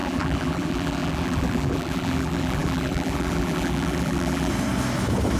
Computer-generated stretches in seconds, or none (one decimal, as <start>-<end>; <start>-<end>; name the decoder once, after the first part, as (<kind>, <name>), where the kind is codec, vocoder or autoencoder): 0.0-4.5 (vocoder, BigVGAN v2)